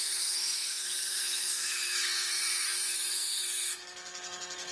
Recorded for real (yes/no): no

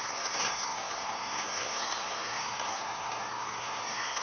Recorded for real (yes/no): no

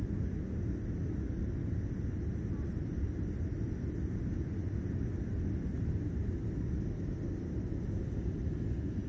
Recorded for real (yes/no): yes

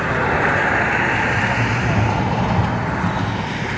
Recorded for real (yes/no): yes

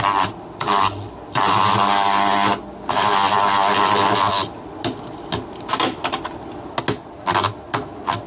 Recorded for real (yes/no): yes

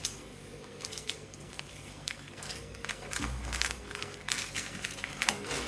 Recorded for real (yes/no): no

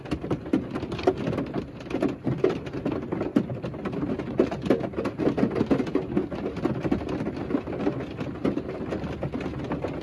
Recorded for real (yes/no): yes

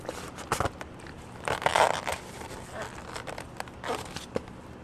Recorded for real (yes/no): yes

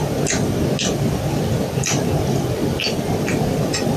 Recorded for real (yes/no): yes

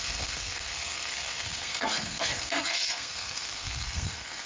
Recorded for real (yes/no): no